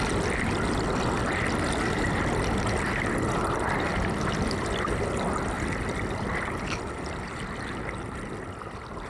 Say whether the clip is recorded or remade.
recorded